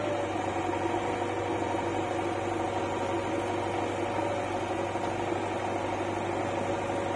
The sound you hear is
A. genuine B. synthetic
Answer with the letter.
A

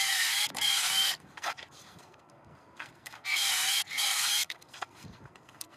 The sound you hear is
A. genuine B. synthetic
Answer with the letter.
B